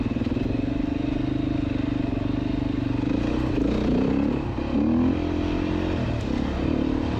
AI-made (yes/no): no